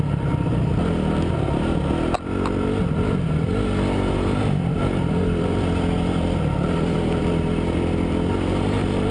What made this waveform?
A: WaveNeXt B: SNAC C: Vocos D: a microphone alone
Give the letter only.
D